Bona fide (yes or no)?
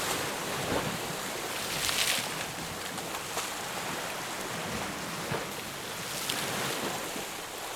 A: yes